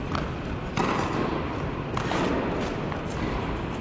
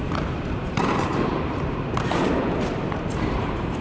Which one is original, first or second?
first